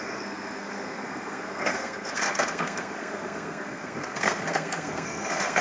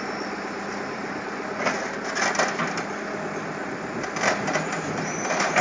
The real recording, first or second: second